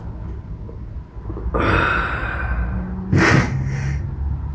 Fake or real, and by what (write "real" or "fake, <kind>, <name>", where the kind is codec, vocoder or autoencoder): real